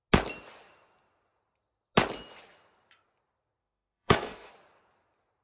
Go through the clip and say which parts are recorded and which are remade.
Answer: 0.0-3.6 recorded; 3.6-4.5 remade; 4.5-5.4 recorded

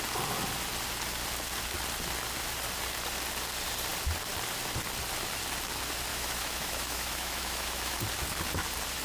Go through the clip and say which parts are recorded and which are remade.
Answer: 0.0-6.1 recorded; 6.1-8.0 remade; 8.0-9.0 recorded

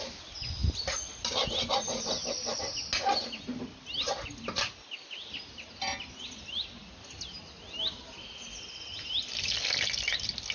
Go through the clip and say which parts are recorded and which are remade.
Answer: 0.0-10.5 recorded

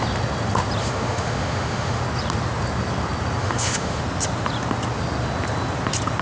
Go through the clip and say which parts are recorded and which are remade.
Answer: 0.0-0.8 recorded; 0.8-2.0 remade; 2.0-3.4 recorded; 3.4-4.0 remade; 4.0-6.2 recorded

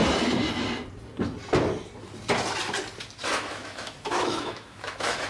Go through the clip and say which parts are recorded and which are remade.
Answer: 0.0-3.2 recorded; 3.2-5.3 remade

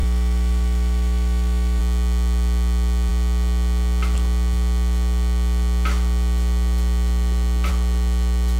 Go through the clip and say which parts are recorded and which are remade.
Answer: 0.0-1.8 remade; 1.8-8.6 recorded

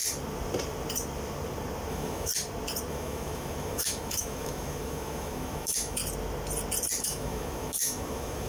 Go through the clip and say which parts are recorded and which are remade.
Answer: 0.0-1.9 recorded; 1.9-2.3 remade; 2.3-2.9 recorded; 2.9-6.0 remade; 6.0-7.0 recorded; 7.0-8.5 remade

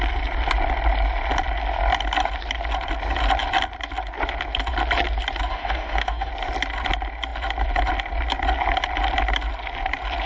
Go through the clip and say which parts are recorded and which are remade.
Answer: 0.0-5.5 recorded; 5.5-6.3 remade; 6.3-10.3 recorded